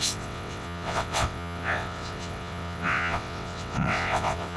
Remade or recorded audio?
remade